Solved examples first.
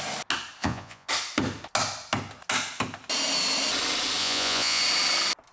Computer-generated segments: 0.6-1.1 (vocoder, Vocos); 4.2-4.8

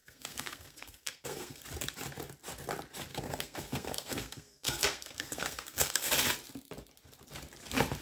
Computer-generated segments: 0.0-1.6 (codec, SNAC); 3.1-6.1

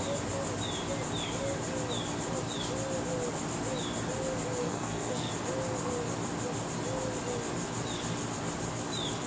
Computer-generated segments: 4.6-5.3 (codec, SNAC)